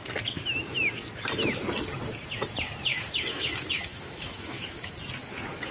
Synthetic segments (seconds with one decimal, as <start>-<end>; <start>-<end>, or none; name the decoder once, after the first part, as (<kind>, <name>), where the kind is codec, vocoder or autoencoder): 2.9-4.9 (autoencoder, DAC-VAE)